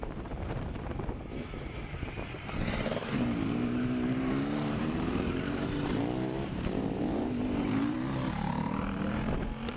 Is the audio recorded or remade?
remade